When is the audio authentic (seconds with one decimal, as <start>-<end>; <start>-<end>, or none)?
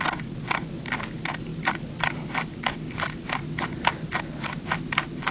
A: 0.0-5.3